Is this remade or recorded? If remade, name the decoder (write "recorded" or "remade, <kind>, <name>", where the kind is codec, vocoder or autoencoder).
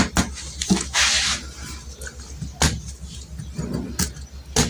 recorded